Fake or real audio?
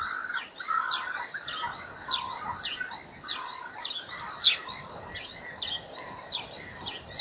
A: real